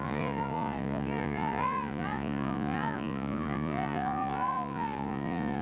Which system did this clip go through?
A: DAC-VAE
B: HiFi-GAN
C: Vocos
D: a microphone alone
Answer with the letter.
C